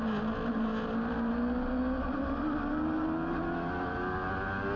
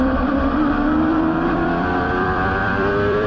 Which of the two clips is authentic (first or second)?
first